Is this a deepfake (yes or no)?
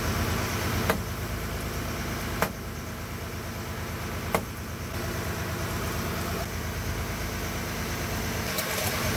no